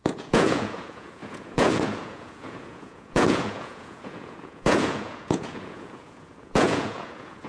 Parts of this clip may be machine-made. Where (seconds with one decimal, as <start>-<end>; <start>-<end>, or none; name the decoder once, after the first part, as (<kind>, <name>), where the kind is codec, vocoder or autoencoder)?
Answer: 0.0-7.5 (vocoder, Vocos)